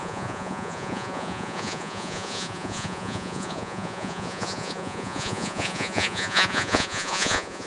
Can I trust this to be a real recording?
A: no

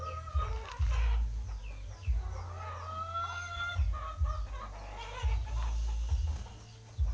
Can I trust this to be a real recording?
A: yes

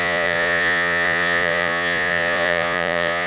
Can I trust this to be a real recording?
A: no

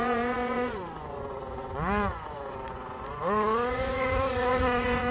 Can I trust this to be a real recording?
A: no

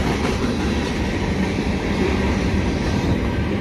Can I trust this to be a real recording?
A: yes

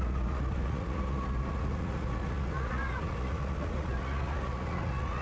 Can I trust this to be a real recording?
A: no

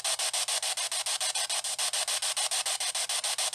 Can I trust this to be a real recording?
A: yes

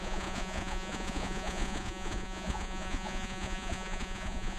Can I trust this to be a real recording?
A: no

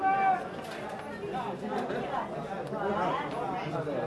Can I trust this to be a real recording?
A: yes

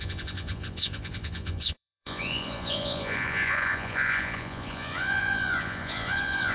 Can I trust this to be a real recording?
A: no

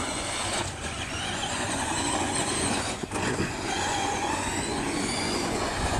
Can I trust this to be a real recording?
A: no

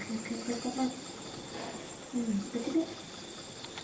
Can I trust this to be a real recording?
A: yes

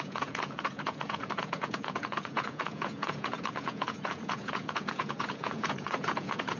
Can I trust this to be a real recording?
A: no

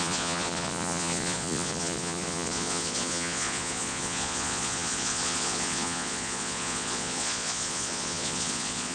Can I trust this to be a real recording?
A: no